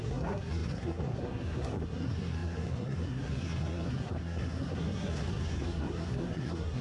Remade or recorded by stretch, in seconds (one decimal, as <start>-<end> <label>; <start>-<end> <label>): 0.0-6.8 remade